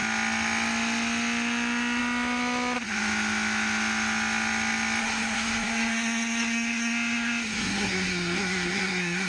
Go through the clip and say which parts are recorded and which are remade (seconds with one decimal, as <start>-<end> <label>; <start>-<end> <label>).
0.0-5.0 recorded; 5.0-9.3 remade